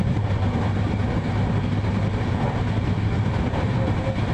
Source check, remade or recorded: recorded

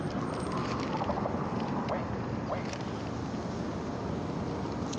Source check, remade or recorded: recorded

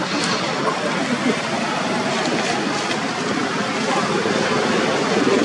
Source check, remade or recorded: recorded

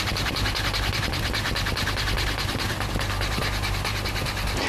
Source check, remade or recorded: remade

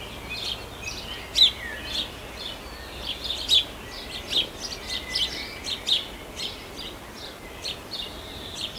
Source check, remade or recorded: recorded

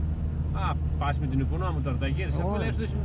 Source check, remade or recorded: recorded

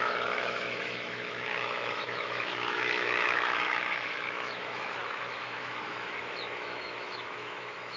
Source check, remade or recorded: remade